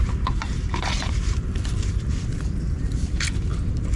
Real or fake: fake